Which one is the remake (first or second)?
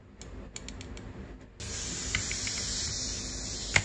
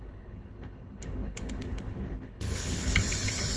second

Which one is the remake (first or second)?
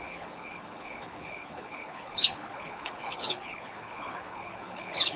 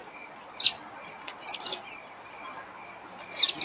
first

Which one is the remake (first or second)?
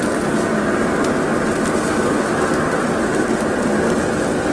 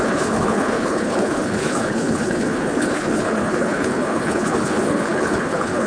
second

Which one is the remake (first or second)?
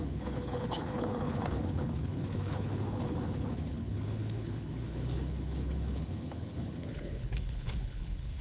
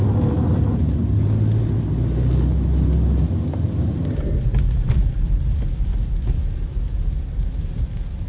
first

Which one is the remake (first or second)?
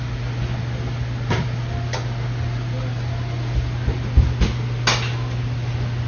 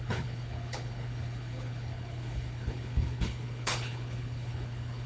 second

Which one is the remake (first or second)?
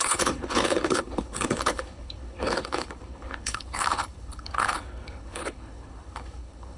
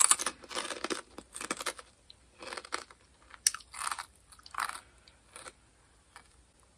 first